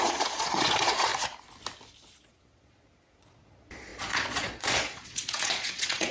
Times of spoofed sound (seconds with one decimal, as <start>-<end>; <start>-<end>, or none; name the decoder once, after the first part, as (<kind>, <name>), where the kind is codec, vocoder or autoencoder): 0.0-1.1 (vocoder, Vocos); 2.2-6.1